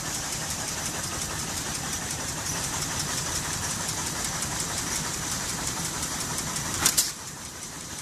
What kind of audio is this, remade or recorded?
remade